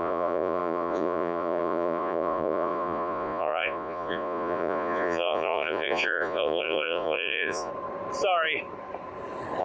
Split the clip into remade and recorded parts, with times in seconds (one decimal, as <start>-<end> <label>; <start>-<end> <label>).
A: 0.0-7.7 remade; 7.7-9.6 recorded